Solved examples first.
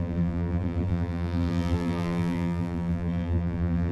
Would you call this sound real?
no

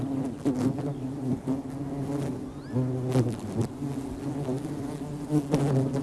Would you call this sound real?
yes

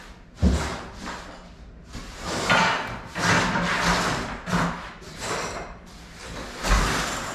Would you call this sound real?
yes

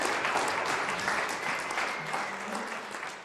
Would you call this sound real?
yes